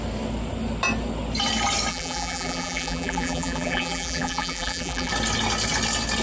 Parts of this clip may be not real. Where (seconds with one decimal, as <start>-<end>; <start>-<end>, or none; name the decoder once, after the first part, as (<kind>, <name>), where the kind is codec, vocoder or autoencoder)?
1.9-5.1 (vocoder, BigVGAN v2)